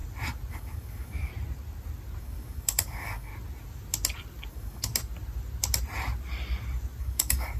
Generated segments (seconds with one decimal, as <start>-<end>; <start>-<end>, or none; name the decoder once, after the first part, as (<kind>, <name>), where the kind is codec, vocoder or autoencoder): 0.5-1.3 (codec, DAC); 2.2-3.3; 4.5-4.9; 7.0-7.6